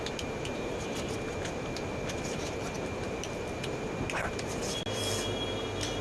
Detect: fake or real real